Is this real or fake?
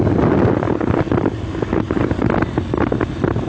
real